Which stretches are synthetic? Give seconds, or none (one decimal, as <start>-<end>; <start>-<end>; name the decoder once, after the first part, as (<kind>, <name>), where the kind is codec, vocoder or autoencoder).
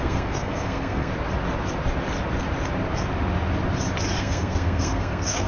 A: 0.0-1.1 (codec, SNAC); 4.2-5.5